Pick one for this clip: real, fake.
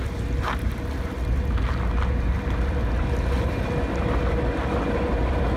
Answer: real